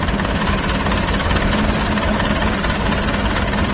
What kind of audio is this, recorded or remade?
recorded